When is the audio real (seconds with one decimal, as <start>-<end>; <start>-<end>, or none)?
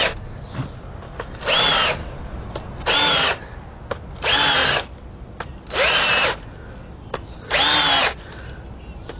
0.0-9.2